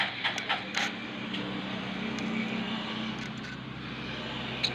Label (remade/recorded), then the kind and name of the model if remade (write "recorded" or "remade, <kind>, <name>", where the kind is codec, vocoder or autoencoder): recorded